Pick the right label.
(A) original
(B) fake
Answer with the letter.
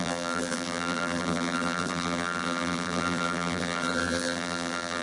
B